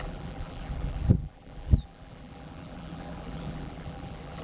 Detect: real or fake fake